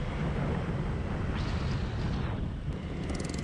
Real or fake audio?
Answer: real